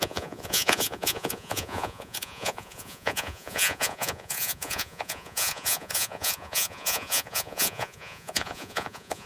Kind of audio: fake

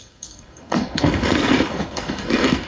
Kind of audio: fake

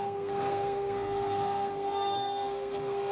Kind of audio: fake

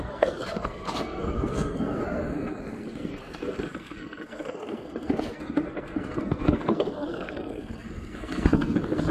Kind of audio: fake